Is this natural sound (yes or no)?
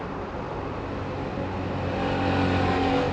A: yes